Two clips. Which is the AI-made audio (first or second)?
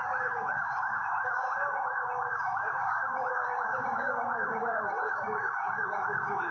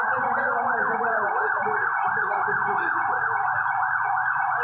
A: first